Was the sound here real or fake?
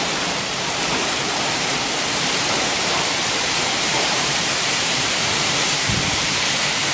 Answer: fake